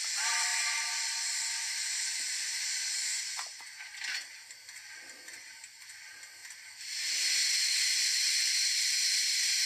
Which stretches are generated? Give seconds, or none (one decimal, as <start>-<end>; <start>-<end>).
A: none